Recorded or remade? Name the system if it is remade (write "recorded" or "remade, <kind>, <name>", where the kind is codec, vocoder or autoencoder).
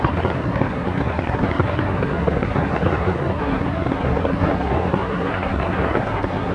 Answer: remade, codec, SNAC